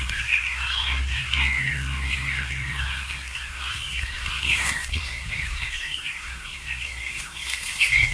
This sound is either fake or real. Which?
fake